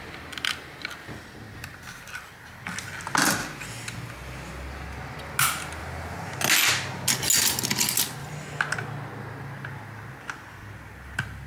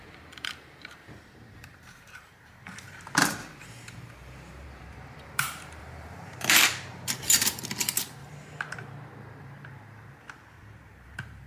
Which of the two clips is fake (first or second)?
second